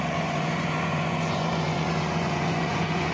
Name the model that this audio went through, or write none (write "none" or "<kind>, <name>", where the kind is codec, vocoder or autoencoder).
vocoder, Vocos